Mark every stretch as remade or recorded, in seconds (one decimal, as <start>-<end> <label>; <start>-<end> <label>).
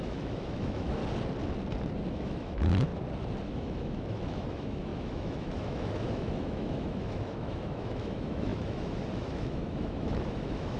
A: 0.0-1.0 remade; 1.0-2.1 recorded; 2.1-2.9 remade; 2.9-3.4 recorded; 3.4-10.8 remade